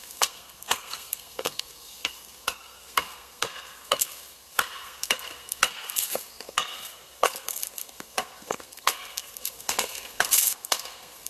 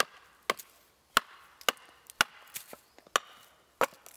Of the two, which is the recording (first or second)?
second